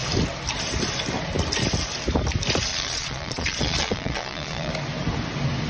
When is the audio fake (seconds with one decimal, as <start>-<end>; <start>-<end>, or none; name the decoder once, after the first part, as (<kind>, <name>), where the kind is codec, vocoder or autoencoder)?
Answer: 2.7-4.7 (vocoder, Vocos)